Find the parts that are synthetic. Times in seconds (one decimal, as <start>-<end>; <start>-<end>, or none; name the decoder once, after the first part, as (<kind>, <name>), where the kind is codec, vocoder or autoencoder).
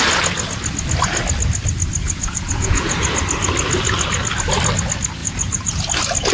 2.0-3.2 (vocoder, Vocos); 5.2-5.8